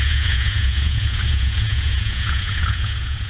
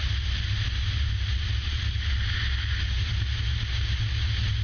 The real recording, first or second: second